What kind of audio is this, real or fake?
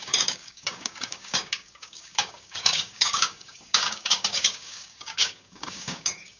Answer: fake